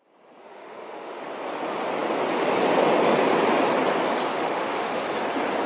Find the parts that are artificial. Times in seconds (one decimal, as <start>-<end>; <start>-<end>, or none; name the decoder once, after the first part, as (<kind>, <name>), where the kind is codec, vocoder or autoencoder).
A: 0.4-1.2 (autoencoder, DAC-VAE); 4.3-5.0